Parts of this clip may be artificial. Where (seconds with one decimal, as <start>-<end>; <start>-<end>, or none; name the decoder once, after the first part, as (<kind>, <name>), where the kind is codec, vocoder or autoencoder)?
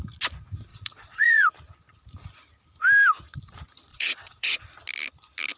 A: 0.7-1.5 (vocoder, Vocos); 3.9-4.6